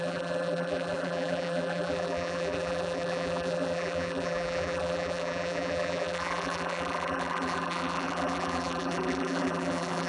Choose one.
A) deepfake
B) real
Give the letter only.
A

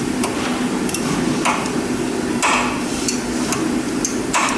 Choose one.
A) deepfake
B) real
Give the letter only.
B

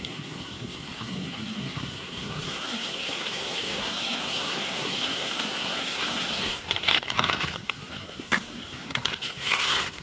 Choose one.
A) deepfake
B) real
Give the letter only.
A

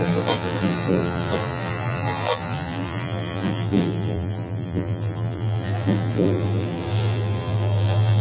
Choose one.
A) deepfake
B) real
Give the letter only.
A